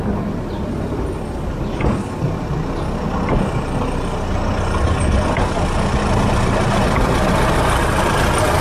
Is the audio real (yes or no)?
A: yes